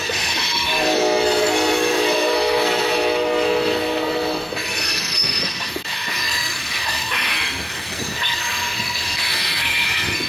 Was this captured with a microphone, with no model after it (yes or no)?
no